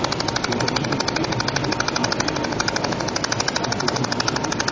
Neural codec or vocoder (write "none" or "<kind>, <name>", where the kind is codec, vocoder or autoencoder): none